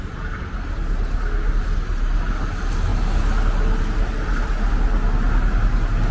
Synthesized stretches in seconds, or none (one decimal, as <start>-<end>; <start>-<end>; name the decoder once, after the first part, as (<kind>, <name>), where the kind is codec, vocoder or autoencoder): none